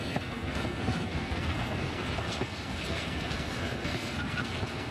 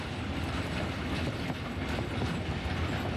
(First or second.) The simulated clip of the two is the first